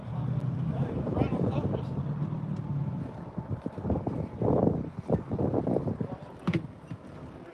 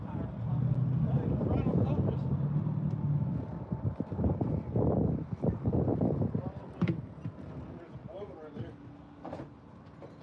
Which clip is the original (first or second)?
second